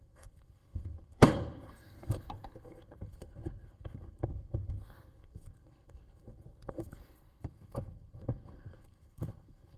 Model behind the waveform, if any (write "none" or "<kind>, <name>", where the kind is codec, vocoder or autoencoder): codec, SNAC